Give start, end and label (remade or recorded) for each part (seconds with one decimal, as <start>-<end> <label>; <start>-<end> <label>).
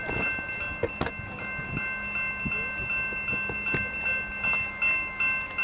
0.0-5.6 recorded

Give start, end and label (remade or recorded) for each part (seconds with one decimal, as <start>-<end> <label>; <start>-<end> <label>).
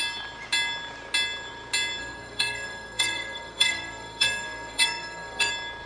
0.0-2.0 recorded; 2.0-5.5 remade; 5.5-5.9 recorded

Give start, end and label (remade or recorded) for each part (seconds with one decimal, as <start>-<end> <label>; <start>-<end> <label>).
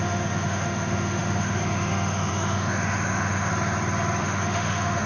0.0-3.5 remade; 3.5-4.2 recorded; 4.2-5.1 remade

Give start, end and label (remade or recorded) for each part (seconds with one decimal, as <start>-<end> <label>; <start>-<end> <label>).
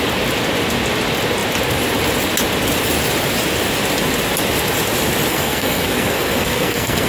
0.0-5.3 recorded; 5.3-7.1 remade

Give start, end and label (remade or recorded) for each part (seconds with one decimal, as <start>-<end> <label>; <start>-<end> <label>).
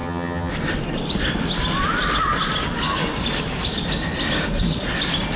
0.0-0.5 remade; 0.5-5.4 recorded